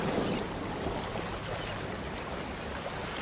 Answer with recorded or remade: recorded